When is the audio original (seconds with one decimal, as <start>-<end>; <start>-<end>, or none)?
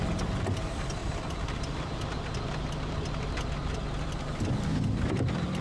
0.0-1.0; 3.1-3.6; 4.3-5.6